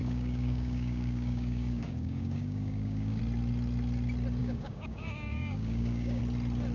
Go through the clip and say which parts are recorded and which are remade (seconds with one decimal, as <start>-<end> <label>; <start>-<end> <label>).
0.0-3.2 remade; 3.2-4.4 recorded; 4.4-6.2 remade; 6.2-6.7 recorded